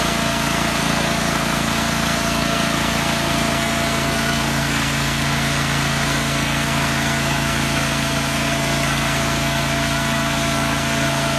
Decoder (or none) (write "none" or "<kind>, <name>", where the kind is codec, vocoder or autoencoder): codec, SNAC